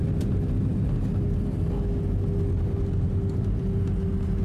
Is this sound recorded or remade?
recorded